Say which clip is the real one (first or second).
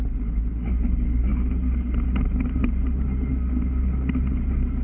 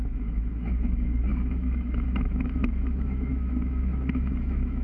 first